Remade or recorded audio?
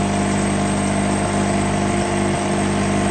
recorded